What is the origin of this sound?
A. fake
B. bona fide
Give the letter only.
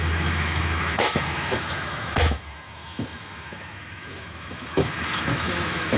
A